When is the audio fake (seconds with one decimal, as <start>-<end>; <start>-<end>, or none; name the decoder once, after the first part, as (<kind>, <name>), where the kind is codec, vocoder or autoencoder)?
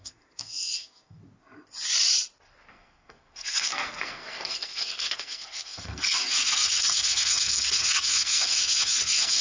0.0-1.2 (codec, SNAC); 2.7-9.4